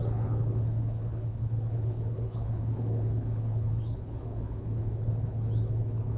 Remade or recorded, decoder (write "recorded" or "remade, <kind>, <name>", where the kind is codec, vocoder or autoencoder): remade, codec, HILCodec